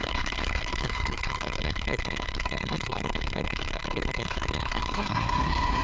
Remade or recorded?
remade